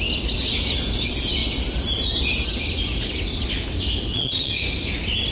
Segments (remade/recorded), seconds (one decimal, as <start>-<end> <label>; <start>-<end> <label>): 0.0-4.1 recorded; 4.1-4.6 remade; 4.6-5.3 recorded